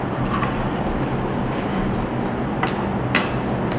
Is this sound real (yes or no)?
yes